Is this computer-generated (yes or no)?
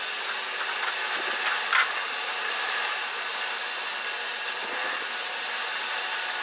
no